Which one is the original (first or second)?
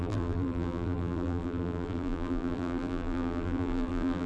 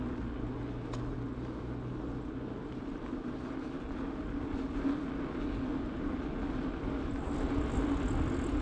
second